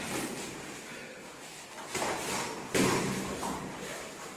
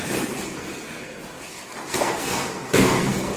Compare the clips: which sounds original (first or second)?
first